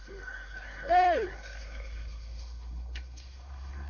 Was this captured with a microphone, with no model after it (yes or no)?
no